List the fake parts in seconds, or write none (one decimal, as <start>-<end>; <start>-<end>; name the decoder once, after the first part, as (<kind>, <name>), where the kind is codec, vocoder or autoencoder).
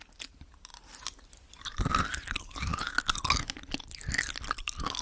none